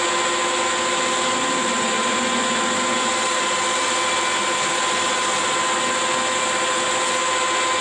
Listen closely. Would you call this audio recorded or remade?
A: recorded